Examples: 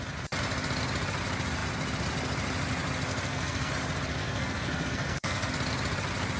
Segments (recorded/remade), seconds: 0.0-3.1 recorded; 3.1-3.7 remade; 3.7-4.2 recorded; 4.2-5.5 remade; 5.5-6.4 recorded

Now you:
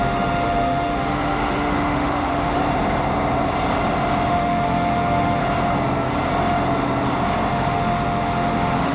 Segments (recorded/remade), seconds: 0.0-2.6 remade; 2.6-4.3 recorded; 4.3-5.4 remade; 5.4-7.5 recorded; 7.5-8.9 remade